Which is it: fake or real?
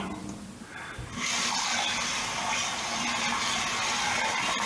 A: real